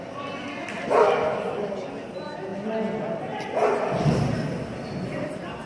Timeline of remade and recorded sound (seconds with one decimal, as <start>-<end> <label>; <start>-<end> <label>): 0.0-5.7 recorded

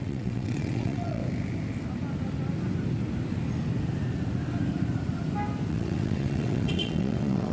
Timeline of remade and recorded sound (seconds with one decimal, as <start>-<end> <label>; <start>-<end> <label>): 0.0-1.2 remade; 1.2-5.7 recorded; 5.7-7.5 remade

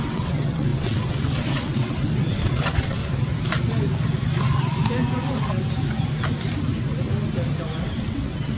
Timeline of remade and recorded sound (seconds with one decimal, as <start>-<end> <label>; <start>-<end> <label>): 0.0-3.0 remade; 3.0-7.8 recorded; 7.8-8.6 remade

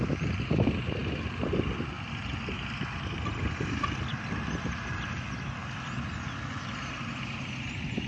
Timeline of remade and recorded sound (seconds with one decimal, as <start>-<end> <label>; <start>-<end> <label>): 0.0-8.1 recorded

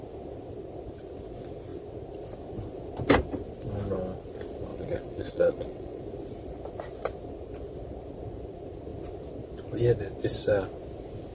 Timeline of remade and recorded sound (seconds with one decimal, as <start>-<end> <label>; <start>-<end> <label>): 0.0-4.7 recorded; 4.7-6.0 remade; 6.0-11.3 recorded

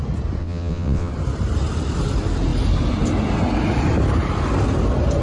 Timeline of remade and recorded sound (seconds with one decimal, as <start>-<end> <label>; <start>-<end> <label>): 0.0-0.4 recorded; 0.4-1.1 remade; 1.1-5.2 recorded

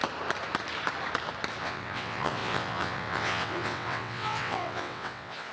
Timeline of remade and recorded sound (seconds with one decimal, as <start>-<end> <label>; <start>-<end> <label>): 0.0-1.6 recorded; 1.6-5.5 remade